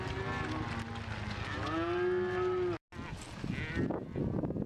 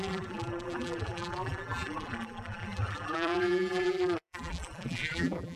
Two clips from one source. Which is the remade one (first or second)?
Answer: second